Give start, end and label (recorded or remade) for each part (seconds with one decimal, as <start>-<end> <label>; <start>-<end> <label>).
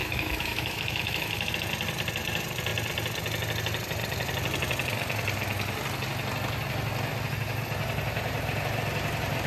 0.0-1.5 remade; 1.5-9.5 recorded